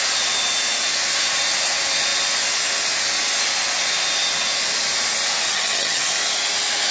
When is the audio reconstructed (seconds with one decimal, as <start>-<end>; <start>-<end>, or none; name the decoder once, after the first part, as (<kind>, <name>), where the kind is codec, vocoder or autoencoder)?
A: 5.5-6.1 (vocoder, HiFi-GAN)